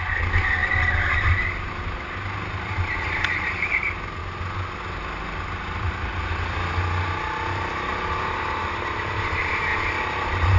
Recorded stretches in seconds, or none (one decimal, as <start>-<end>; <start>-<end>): 0.0-10.6